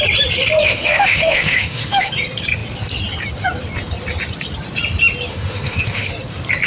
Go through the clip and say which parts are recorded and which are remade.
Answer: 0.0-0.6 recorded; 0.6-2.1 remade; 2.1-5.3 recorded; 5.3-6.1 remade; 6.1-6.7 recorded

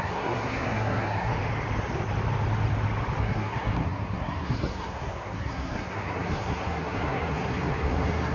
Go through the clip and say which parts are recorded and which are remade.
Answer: 0.0-1.3 remade; 1.3-3.2 recorded; 3.2-8.3 remade

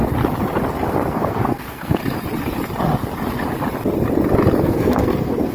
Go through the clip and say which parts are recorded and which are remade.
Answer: 0.0-0.9 recorded; 0.9-2.0 remade; 2.0-4.6 recorded; 4.6-5.5 remade

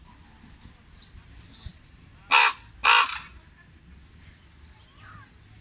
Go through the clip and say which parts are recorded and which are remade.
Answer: 0.0-1.7 recorded; 1.7-2.4 remade; 2.4-5.6 recorded

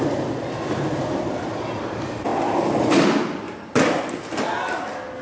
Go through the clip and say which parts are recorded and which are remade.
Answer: 0.0-5.2 recorded

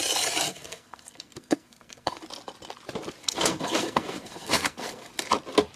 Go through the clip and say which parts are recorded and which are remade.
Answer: 0.0-0.5 recorded; 0.5-2.2 remade; 2.2-3.2 recorded; 3.2-5.1 remade; 5.1-5.8 recorded